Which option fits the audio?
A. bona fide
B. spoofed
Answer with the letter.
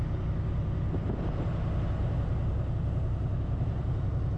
A